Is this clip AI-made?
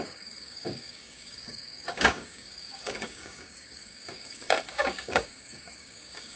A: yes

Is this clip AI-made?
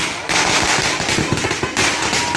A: no